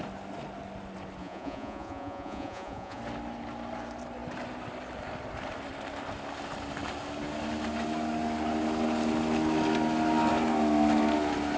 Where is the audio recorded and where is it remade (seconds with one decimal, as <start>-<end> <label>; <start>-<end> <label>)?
0.0-1.2 recorded; 1.2-3.0 remade; 3.0-11.6 recorded